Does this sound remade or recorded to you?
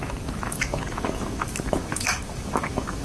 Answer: remade